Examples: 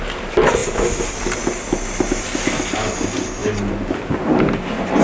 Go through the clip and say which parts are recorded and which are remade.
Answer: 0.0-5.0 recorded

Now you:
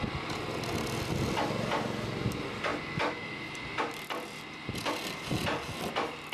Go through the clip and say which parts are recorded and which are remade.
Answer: 0.0-6.3 recorded

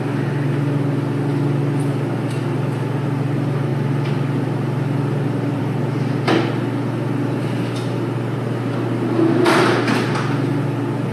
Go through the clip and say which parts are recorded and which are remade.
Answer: 0.0-11.1 recorded